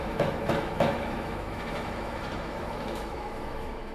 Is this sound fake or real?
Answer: fake